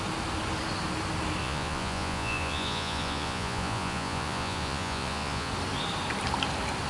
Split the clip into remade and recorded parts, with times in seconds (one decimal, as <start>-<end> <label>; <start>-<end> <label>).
0.0-1.4 recorded; 1.4-5.5 remade; 5.5-6.9 recorded